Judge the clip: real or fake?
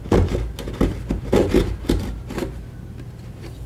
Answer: real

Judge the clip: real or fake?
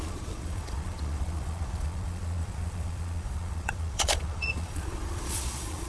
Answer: fake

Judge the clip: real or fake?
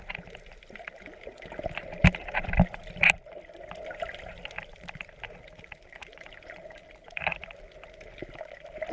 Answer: real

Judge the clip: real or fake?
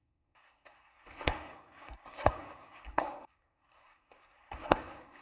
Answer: fake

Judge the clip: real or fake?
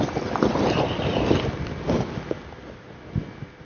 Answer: real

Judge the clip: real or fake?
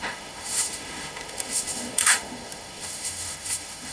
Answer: fake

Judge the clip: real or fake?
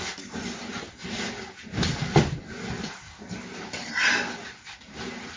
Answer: real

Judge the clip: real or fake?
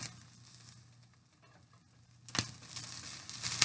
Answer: real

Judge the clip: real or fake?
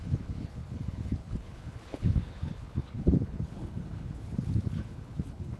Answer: fake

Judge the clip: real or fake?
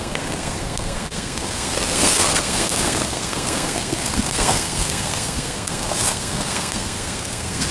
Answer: fake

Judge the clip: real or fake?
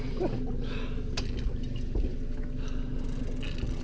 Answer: real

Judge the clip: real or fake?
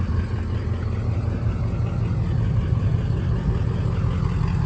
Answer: real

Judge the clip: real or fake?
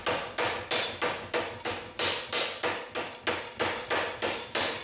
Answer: real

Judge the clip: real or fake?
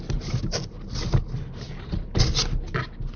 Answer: real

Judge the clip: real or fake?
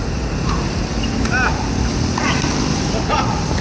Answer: real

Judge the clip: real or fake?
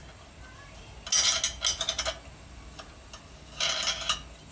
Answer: real